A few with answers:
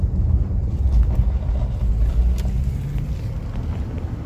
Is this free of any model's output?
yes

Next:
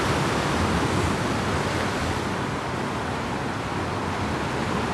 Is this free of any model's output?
yes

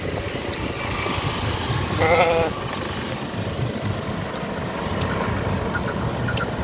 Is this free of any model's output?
yes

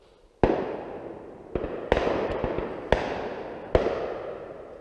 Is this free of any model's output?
yes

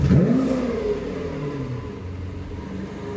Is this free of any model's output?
yes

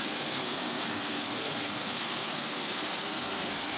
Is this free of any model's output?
no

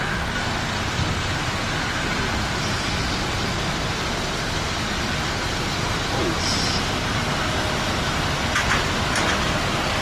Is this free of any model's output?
yes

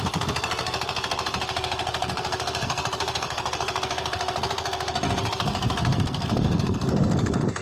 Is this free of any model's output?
no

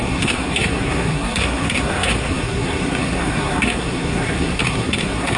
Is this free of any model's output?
no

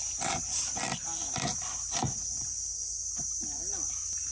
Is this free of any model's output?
yes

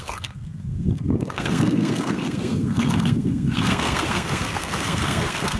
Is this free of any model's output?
no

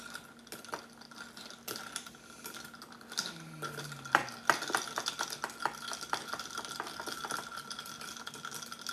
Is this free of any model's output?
yes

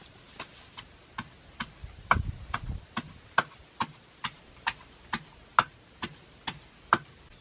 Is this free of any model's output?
yes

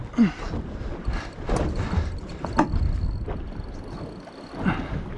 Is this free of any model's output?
yes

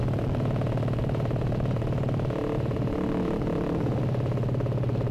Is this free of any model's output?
yes